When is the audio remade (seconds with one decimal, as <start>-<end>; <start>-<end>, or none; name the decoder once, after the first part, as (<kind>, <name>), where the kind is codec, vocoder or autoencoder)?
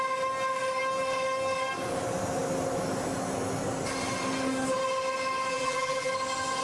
5.5-6.1 (vocoder, BigVGAN v2)